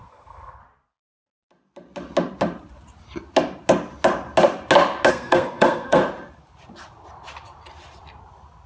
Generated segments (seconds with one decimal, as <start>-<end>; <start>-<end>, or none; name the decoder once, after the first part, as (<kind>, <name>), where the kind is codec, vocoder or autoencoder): 0.0-0.6 (codec, SNAC); 5.1-6.0